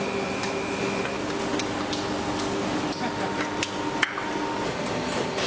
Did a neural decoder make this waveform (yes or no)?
no